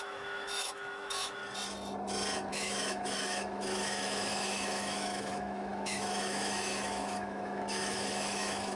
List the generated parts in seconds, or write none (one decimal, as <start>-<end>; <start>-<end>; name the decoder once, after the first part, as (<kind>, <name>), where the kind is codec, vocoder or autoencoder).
0.0-1.4 (autoencoder, DAC-VAE); 2.5-8.8